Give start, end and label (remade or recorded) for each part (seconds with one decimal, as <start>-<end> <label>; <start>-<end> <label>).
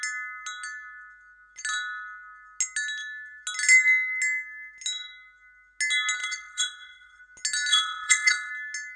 0.0-6.2 recorded; 6.2-7.2 remade; 7.2-7.7 recorded; 7.7-8.5 remade; 8.5-9.0 recorded